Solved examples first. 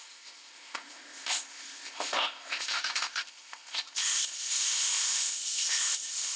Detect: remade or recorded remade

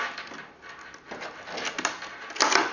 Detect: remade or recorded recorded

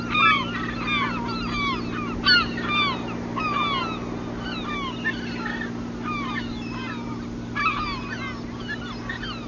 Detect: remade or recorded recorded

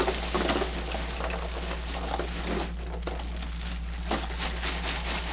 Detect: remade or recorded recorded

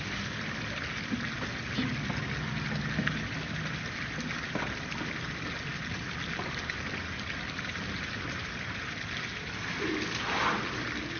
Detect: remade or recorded recorded